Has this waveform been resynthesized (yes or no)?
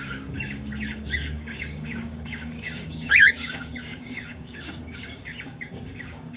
yes